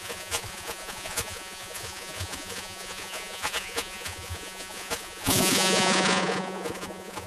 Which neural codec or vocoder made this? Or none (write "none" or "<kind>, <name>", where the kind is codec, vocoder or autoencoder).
vocoder, Vocos